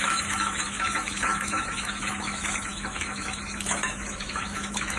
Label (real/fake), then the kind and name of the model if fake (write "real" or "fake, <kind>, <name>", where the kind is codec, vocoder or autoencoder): fake, autoencoder, DAC-VAE